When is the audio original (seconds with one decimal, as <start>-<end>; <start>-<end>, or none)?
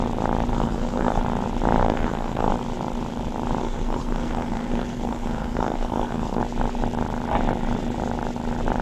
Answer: 0.0-0.5; 1.2-1.8; 2.5-3.6; 6.4-8.8